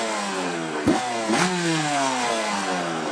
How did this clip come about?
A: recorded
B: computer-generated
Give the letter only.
B